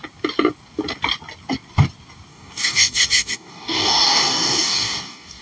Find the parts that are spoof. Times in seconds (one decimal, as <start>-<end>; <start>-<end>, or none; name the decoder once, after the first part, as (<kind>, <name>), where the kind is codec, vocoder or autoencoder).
2.3-5.4 (codec, DAC)